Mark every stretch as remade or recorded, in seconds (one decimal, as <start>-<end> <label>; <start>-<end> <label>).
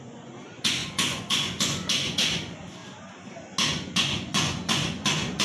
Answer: 0.0-2.8 remade; 2.8-3.7 recorded; 3.7-5.4 remade